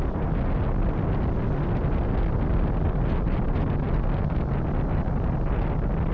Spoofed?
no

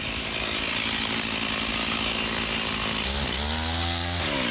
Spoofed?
no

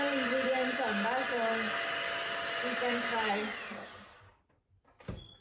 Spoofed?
no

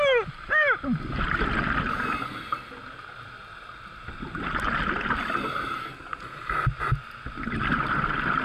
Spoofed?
no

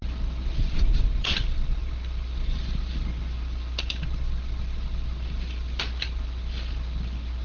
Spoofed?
no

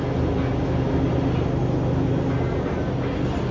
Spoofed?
no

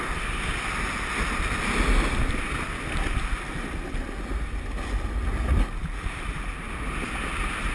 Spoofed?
no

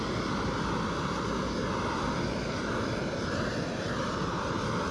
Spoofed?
no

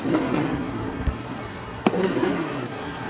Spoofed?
yes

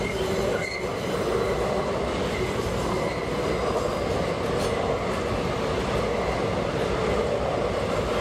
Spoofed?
no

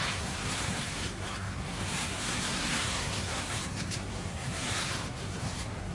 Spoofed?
yes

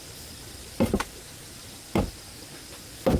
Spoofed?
no